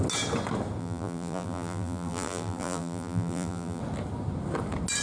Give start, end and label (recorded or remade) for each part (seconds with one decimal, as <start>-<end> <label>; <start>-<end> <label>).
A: 0.0-0.8 recorded; 0.8-3.8 remade; 3.8-5.0 recorded